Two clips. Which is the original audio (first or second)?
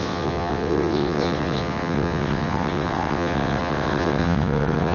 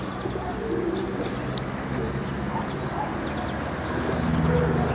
second